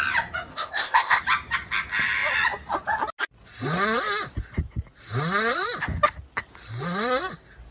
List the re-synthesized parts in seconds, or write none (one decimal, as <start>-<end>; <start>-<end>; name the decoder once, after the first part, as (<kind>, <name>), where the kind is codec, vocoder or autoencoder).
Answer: 0.5-1.2 (codec, ZipCodec)